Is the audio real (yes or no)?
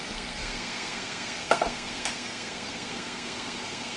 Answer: no